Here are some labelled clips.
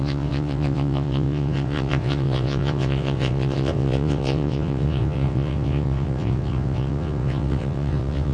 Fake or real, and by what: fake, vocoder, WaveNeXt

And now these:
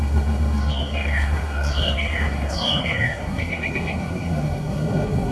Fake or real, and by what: fake, codec, SNAC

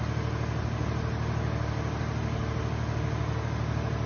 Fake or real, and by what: real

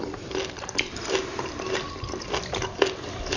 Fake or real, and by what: fake, vocoder, BigVGAN v2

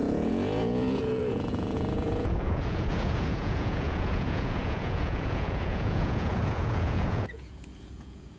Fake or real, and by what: fake, vocoder, Vocos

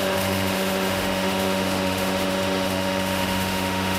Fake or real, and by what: fake, autoencoder, DAC-VAE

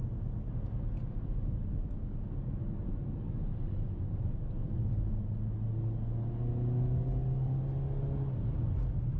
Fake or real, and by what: real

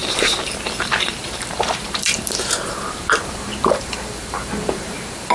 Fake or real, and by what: fake, vocoder, BigVGAN v2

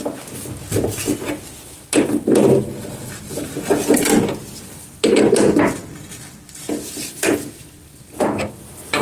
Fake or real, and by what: real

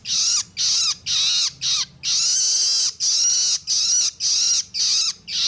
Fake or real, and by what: real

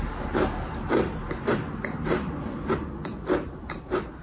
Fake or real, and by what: real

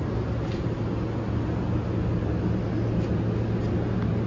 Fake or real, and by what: real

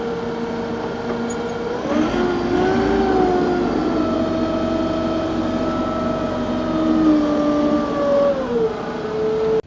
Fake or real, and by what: real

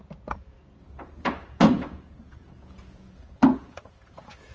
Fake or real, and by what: fake, vocoder, Vocos